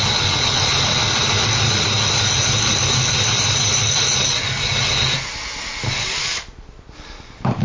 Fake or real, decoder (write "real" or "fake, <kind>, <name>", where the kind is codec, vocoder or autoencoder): real